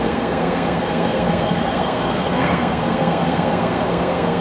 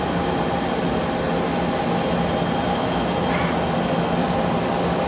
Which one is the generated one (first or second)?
first